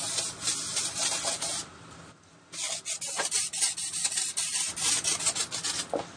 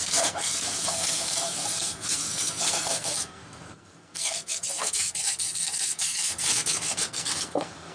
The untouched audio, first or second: first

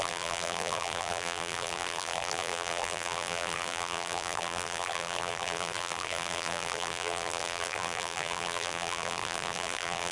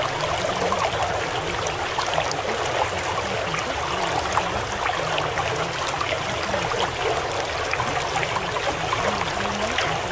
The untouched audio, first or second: second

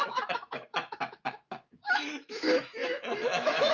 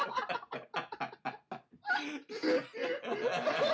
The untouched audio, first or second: second